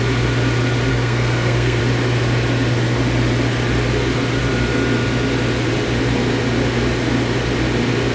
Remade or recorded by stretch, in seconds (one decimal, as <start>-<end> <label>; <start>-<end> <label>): 0.0-0.9 recorded; 0.9-1.8 remade; 1.8-8.1 recorded